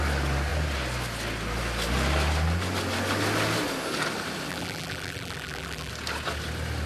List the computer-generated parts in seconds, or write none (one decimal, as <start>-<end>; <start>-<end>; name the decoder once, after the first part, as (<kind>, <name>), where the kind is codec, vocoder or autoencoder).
4.5-5.9 (vocoder, BigVGAN v2)